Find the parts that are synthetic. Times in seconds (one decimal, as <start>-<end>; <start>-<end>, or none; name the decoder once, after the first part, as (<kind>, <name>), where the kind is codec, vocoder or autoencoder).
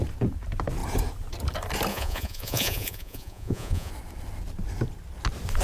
1.9-3.9 (vocoder, Vocos)